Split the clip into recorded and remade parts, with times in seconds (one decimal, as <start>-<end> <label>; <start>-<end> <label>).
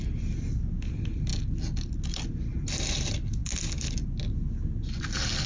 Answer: 0.0-5.5 recorded